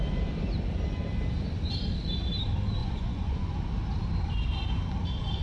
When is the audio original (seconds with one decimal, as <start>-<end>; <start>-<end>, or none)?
0.0-2.8; 3.5-5.4